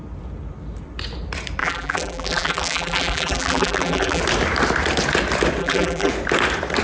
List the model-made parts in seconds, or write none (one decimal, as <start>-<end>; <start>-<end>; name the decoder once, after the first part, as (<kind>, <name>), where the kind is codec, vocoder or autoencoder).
1.6-4.2 (vocoder, BigVGAN v2); 5.6-6.1